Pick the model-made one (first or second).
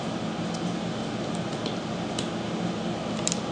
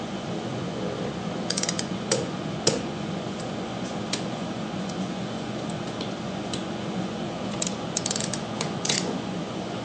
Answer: second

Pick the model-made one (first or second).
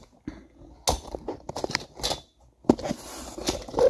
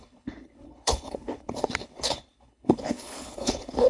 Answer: second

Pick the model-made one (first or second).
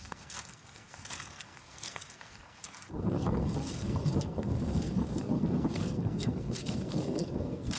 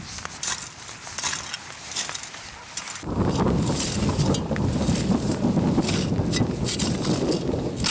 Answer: first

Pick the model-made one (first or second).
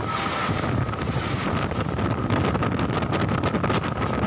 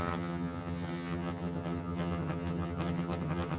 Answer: second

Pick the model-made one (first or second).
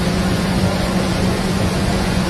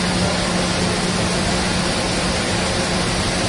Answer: first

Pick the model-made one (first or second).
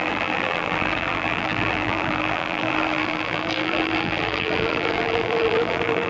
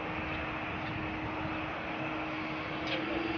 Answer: first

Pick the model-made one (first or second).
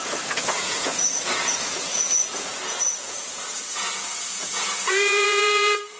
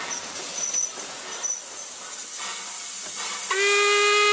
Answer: first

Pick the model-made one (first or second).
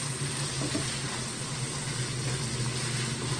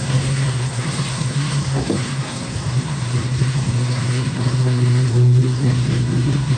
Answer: second